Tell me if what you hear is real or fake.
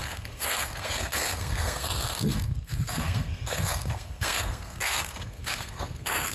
fake